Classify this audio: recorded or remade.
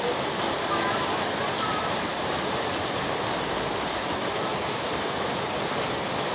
recorded